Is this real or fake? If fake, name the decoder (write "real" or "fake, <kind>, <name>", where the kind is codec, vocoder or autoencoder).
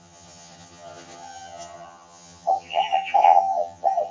fake, vocoder, HiFi-GAN